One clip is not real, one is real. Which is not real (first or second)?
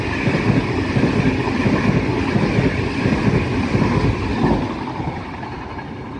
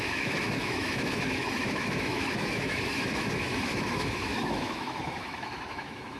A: second